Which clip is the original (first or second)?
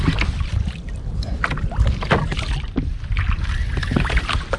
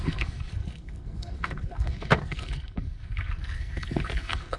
first